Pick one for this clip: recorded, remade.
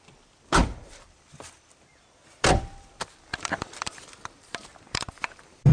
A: remade